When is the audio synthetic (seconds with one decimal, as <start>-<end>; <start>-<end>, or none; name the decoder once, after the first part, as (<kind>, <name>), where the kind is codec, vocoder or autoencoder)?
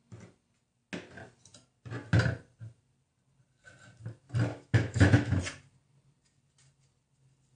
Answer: 4.5-5.4 (autoencoder, DAC-VAE)